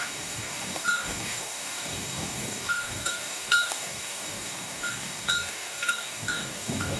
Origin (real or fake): fake